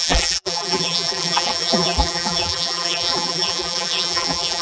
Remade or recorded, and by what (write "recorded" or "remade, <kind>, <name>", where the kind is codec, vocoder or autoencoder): remade, vocoder, BigVGAN v2